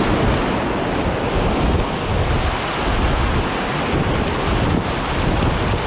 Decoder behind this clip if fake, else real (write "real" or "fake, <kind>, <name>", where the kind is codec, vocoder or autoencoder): real